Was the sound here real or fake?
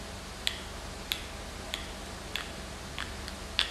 real